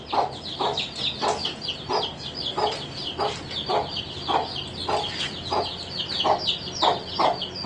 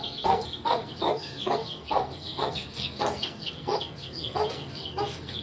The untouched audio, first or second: first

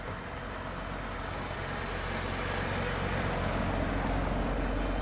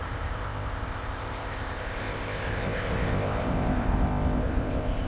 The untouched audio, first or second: first